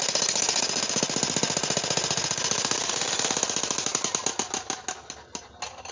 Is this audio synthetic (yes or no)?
no